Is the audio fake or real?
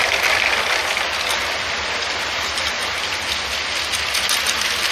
real